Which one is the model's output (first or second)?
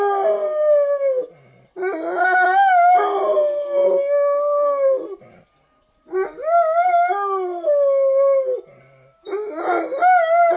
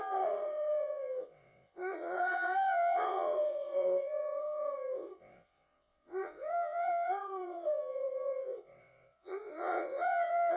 second